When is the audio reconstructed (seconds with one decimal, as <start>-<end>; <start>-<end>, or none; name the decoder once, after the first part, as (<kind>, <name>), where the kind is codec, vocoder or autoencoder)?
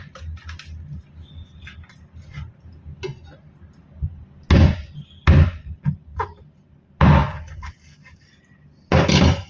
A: none